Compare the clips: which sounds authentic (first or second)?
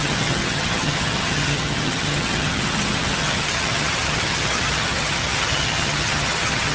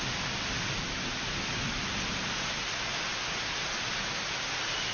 second